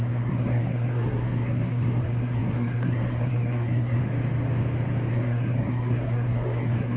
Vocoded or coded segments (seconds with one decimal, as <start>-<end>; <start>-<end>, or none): 0.0-4.0; 5.1-7.0